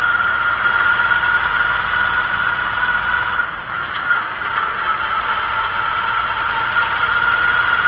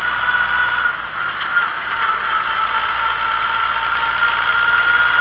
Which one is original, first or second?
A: second